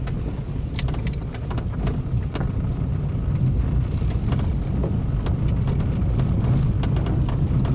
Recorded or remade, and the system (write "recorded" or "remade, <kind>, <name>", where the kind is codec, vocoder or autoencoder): recorded